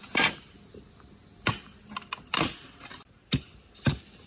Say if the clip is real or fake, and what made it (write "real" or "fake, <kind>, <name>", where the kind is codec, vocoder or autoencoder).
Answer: real